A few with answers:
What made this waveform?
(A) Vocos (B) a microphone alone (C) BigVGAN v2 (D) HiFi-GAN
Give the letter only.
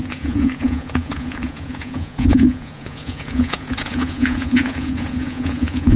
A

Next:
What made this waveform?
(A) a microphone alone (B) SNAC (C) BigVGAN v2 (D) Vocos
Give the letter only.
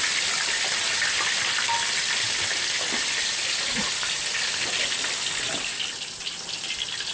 A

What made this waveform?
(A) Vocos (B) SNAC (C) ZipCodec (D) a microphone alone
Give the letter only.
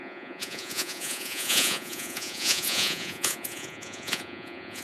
A